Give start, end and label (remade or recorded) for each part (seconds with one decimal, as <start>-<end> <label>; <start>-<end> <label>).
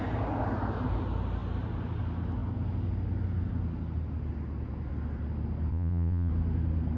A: 0.0-5.7 recorded; 5.7-6.3 remade; 6.3-7.0 recorded